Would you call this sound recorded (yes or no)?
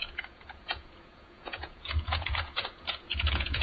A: no